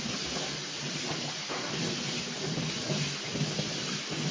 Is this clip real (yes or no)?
yes